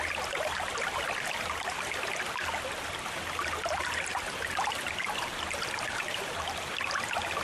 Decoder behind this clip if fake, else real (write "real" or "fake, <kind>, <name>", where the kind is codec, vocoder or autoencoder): real